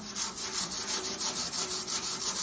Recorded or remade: remade